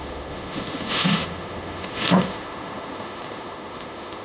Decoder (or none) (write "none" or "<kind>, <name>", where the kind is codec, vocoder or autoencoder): autoencoder, DAC-VAE